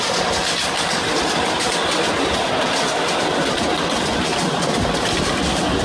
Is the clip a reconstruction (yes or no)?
no